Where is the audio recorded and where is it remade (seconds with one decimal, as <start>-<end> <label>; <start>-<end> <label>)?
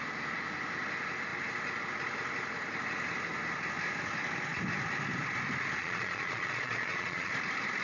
0.0-5.8 recorded; 5.8-7.3 remade; 7.3-7.8 recorded